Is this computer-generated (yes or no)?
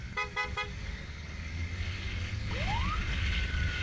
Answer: yes